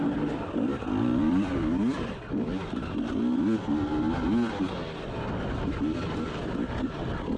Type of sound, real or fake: real